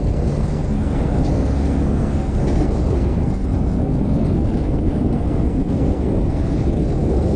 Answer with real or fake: fake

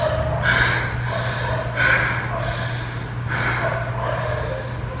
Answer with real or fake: real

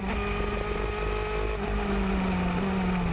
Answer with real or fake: real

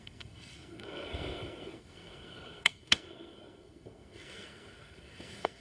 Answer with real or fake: fake